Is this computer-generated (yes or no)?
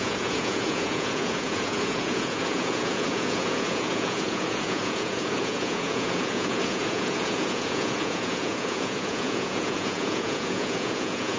yes